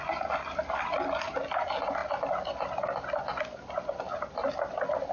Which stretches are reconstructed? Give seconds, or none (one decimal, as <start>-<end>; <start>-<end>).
none